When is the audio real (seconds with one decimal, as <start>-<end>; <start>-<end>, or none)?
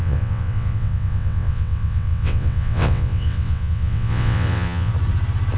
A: 4.9-5.6